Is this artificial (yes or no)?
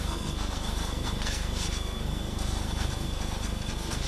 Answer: yes